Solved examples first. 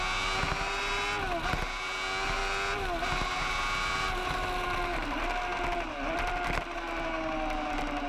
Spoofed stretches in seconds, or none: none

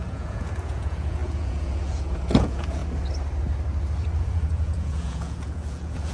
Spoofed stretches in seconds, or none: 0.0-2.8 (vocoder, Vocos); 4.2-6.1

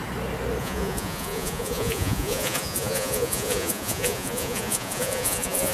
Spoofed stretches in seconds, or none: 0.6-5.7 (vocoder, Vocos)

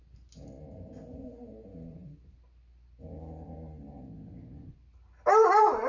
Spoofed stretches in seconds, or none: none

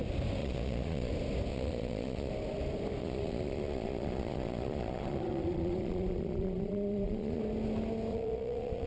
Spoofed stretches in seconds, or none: 0.4-1.1 (vocoder, Vocos); 1.5-2.3; 3.0-7.4; 8.1-8.9

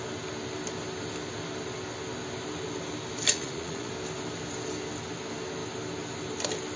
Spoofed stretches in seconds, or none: 3.3-3.9 (vocoder, Vocos)

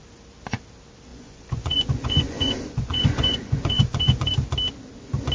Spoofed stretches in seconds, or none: 1.1-4.3 (vocoder, Vocos)